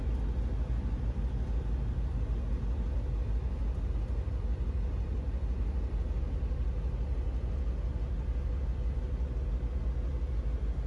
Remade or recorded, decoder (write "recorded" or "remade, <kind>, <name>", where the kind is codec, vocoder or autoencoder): recorded